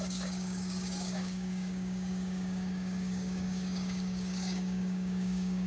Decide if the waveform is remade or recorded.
remade